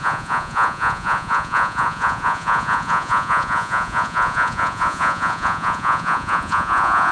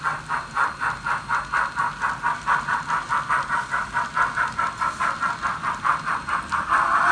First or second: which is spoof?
first